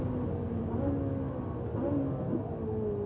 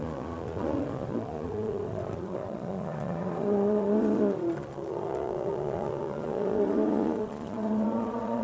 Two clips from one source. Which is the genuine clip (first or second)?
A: first